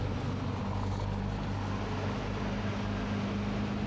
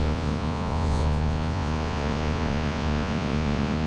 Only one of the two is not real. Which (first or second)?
second